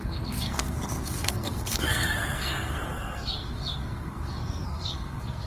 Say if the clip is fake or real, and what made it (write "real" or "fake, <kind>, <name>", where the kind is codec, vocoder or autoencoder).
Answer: fake, codec, SNAC